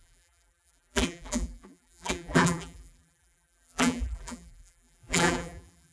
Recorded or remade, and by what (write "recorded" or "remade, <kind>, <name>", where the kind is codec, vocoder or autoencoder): remade, vocoder, BigVGAN v2